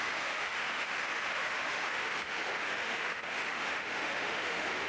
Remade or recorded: remade